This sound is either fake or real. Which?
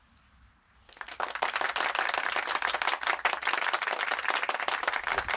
real